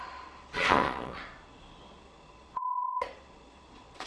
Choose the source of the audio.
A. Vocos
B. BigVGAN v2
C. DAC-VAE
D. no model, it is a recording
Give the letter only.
A